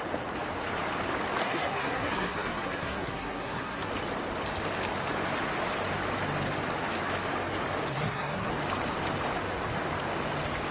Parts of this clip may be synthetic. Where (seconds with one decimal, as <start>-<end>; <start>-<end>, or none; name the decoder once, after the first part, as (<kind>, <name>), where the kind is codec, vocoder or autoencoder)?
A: 1.4-3.9 (codec, SNAC); 7.9-8.5